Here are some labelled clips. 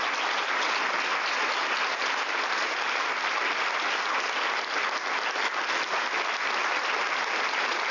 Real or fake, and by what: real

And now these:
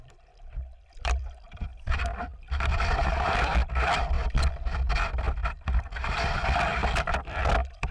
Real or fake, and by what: fake, vocoder, BigVGAN v2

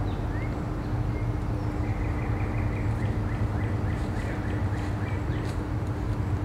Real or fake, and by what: real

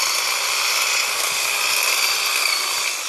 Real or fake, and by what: real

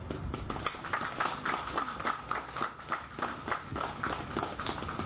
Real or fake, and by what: real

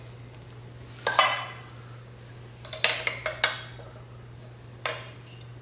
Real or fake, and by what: real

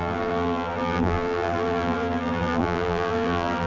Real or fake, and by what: fake, vocoder, BigVGAN v2